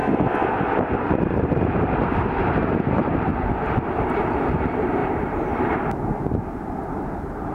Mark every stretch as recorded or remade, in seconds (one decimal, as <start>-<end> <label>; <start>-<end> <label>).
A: 0.0-0.5 recorded; 0.5-3.3 remade; 3.3-4.0 recorded; 4.0-7.5 remade